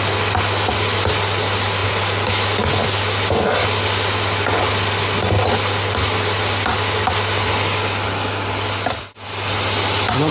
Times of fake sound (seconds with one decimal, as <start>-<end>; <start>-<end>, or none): none